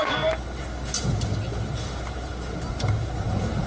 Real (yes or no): yes